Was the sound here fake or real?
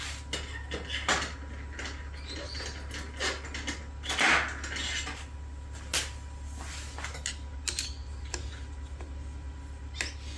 real